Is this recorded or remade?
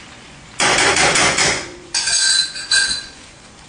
remade